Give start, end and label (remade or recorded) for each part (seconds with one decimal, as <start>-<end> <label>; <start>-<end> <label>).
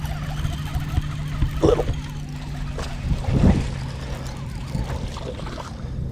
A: 0.0-6.1 recorded